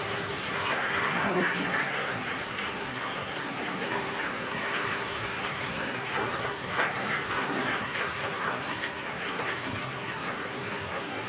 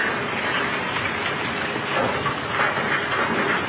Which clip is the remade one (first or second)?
first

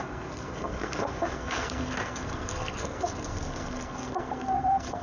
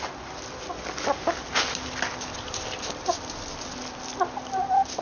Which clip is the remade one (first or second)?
first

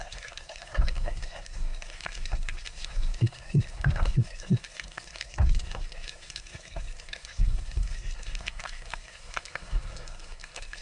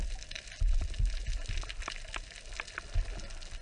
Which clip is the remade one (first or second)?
first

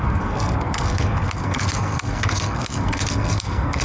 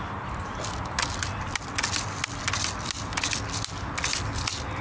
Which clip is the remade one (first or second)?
first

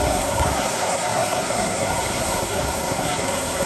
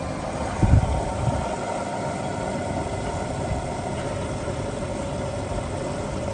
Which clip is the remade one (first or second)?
first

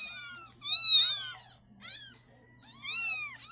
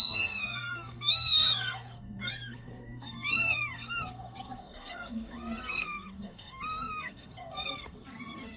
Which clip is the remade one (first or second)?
second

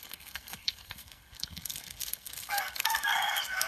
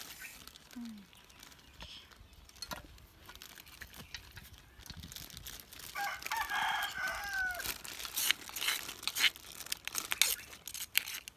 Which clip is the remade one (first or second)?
first